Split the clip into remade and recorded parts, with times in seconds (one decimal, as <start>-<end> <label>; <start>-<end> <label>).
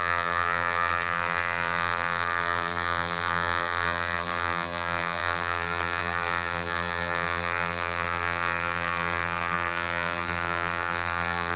0.0-11.6 remade